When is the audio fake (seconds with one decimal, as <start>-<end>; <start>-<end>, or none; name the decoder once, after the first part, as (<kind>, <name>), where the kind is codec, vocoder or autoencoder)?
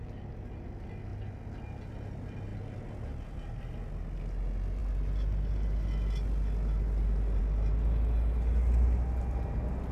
none